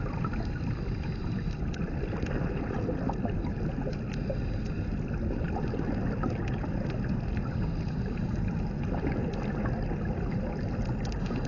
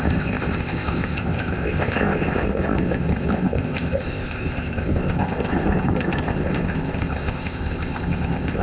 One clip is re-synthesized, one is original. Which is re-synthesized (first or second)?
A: second